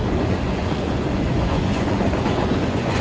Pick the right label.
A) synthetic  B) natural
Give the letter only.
A